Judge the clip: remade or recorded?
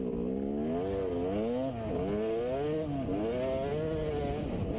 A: recorded